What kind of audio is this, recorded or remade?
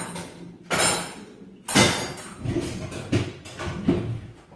recorded